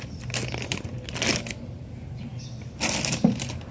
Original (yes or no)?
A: yes